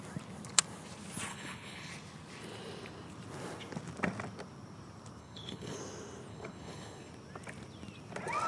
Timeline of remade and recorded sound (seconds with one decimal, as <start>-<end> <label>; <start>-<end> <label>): 0.0-1.3 recorded; 1.3-1.9 remade; 1.9-5.2 recorded; 5.2-5.8 remade; 5.8-6.3 recorded; 6.3-7.1 remade; 7.1-8.5 recorded

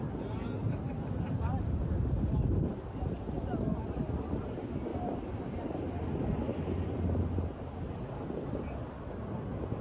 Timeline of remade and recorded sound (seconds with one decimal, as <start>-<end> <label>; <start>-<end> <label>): 0.0-0.6 recorded; 0.6-2.5 remade; 2.5-4.9 recorded; 4.9-9.1 remade; 9.1-9.8 recorded

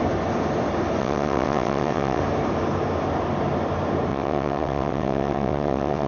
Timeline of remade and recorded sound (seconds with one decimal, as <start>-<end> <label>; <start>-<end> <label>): 0.0-1.0 recorded; 1.0-2.2 remade; 2.2-4.1 recorded; 4.1-6.1 remade

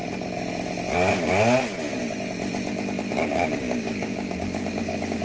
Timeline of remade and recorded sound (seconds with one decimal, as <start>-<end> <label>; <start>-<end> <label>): 0.0-3.1 recorded; 3.1-5.2 remade